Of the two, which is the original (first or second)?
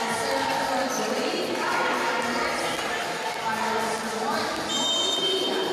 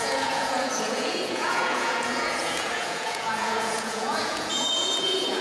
first